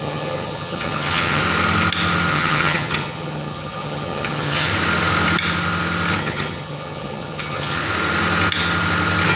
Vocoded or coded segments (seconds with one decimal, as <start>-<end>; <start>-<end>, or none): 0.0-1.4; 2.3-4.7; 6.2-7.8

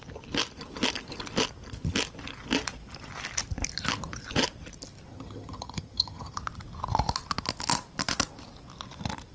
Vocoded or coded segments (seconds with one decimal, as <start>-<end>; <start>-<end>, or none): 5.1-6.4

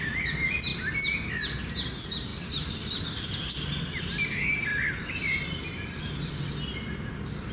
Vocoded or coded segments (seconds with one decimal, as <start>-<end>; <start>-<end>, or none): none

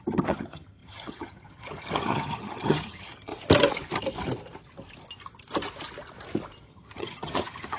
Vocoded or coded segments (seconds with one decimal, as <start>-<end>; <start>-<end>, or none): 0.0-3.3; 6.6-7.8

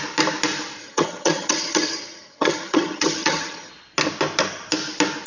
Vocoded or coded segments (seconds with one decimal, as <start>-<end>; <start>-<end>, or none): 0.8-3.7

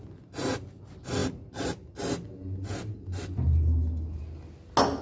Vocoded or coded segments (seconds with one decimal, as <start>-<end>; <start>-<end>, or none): none

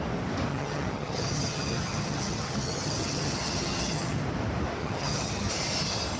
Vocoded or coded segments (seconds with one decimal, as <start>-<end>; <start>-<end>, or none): 0.5-4.2; 4.8-5.5

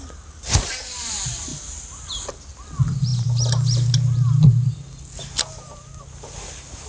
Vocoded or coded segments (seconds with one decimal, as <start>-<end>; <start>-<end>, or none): none